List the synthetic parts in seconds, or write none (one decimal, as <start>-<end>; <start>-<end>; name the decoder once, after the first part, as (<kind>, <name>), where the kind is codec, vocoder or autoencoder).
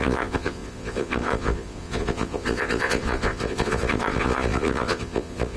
0.0-5.6 (vocoder, Vocos)